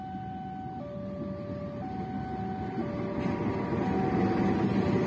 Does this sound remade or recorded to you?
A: recorded